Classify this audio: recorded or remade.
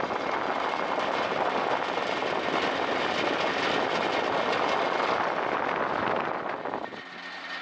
recorded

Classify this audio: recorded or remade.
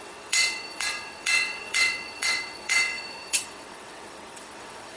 remade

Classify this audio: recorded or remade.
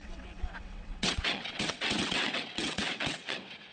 remade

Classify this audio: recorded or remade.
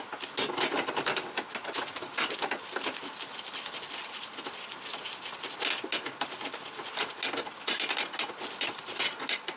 recorded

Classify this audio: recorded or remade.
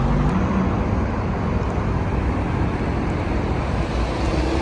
recorded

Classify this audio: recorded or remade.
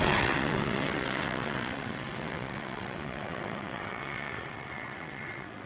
remade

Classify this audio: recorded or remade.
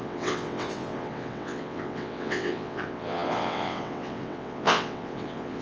remade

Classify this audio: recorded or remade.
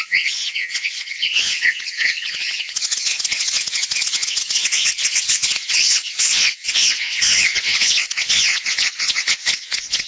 remade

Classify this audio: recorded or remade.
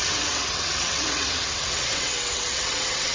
remade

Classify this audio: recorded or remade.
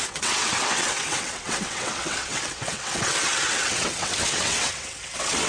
remade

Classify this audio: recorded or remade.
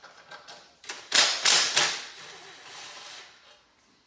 recorded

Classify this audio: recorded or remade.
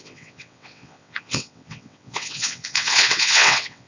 remade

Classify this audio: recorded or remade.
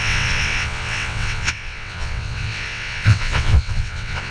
remade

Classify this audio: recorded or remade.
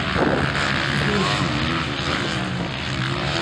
recorded